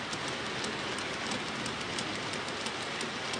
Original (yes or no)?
yes